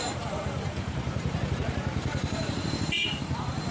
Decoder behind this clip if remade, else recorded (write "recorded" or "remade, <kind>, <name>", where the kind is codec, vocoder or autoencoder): remade, vocoder, BigVGAN v2